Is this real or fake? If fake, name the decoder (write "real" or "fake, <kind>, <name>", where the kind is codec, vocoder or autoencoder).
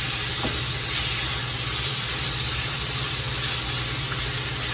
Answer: real